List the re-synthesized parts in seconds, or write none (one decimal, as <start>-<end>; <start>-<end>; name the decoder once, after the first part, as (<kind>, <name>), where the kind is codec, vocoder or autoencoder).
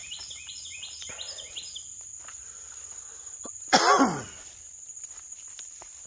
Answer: none